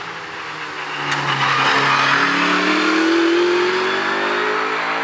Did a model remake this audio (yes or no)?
no